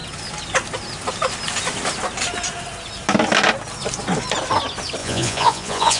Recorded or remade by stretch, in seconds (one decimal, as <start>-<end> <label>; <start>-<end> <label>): 0.0-5.0 recorded; 5.0-6.0 remade